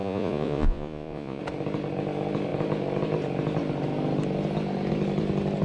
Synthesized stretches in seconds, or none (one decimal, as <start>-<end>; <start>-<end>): 0.0-1.4